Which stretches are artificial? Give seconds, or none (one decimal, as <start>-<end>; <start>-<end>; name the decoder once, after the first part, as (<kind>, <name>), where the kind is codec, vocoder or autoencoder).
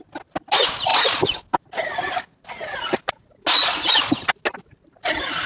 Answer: none